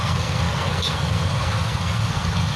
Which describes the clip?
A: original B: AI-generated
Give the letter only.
B